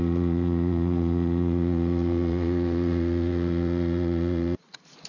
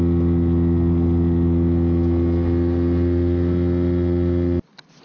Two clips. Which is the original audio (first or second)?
second